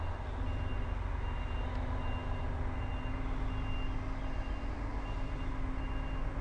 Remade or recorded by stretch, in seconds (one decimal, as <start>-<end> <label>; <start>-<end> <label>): 0.0-6.4 recorded